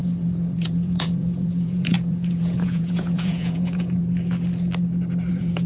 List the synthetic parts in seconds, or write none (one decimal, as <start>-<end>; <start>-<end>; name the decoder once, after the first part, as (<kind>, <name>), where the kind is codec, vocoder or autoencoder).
0.0-4.0 (vocoder, Vocos); 5.3-5.7